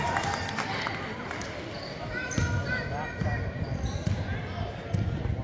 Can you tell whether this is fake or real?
real